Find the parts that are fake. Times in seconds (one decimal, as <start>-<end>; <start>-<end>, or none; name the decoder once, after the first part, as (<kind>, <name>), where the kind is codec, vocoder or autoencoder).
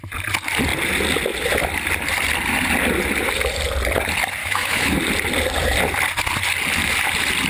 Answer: 4.4-5.0 (autoencoder, DAC-VAE)